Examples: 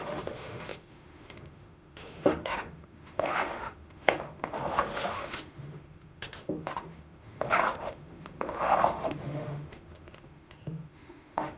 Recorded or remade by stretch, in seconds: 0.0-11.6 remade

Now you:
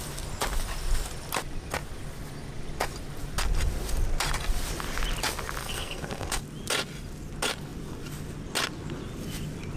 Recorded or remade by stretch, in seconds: 0.0-5.6 recorded; 5.6-6.4 remade; 6.4-9.8 recorded

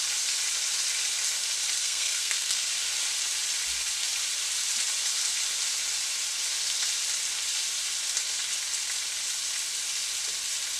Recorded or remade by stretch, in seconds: 0.0-1.8 recorded; 1.8-2.7 remade; 2.7-10.8 recorded

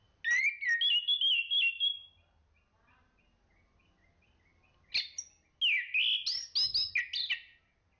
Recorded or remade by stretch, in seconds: 0.0-8.0 recorded

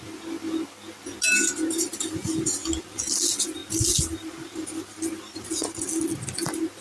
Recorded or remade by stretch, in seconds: 0.0-6.8 recorded

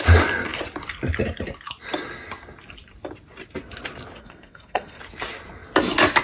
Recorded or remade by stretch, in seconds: 0.0-4.2 recorded; 4.2-5.0 remade; 5.0-6.2 recorded

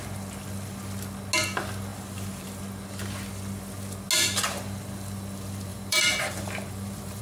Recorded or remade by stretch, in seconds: 0.0-1.9 recorded; 1.9-2.6 remade; 2.6-5.7 recorded; 5.7-7.2 remade